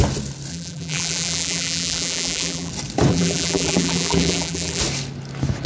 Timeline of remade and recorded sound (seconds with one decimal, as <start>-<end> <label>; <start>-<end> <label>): 0.0-0.5 recorded; 0.5-2.7 remade; 2.7-3.1 recorded; 3.1-4.8 remade; 4.8-5.7 recorded

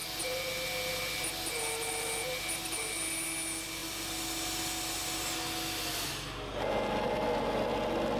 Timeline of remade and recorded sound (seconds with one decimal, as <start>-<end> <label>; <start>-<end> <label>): 0.0-8.2 recorded

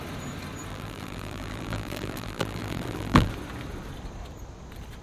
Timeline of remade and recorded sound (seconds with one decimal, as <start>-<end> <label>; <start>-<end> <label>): 0.0-0.7 recorded; 0.7-3.3 remade; 3.3-5.0 recorded

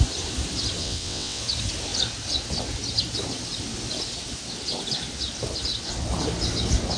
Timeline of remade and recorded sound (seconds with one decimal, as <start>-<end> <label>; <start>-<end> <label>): 0.0-0.8 recorded; 0.8-1.4 remade; 1.4-7.0 recorded

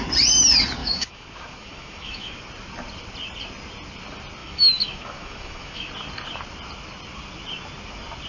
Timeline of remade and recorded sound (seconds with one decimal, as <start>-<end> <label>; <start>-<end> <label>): 0.0-0.8 recorded; 0.8-2.4 remade; 2.4-4.4 recorded; 4.4-5.9 remade; 5.9-8.3 recorded

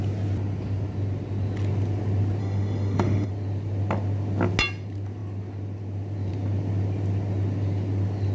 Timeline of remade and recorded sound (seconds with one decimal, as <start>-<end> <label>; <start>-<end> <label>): 0.0-2.4 recorded; 2.4-3.3 remade; 3.3-8.3 recorded

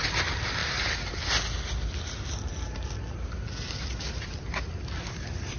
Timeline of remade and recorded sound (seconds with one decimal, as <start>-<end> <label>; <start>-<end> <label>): 0.0-5.6 recorded

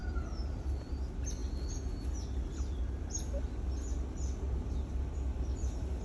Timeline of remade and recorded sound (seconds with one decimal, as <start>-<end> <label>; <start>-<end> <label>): 0.0-1.0 remade; 1.0-6.0 recorded